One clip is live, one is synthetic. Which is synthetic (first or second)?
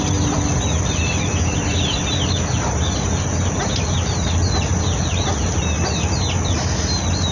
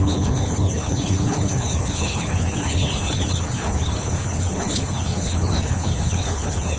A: second